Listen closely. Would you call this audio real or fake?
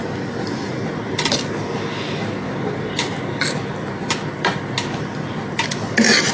real